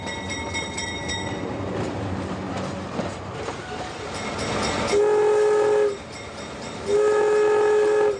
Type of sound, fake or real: real